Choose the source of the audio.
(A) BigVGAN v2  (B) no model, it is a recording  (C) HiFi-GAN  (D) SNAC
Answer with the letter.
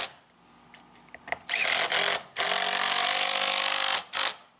B